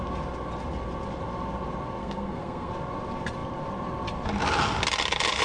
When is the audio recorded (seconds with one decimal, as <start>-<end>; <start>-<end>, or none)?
0.0-2.0; 2.7-5.4